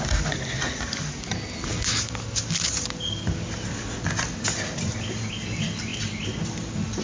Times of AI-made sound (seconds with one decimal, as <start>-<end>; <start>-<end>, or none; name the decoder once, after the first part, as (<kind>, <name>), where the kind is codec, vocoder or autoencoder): none

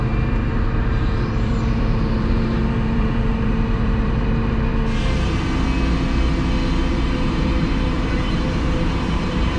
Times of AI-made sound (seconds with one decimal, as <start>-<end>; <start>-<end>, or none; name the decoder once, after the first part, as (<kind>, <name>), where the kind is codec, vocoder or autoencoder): 0.0-4.7 (vocoder, BigVGAN v2); 6.9-9.6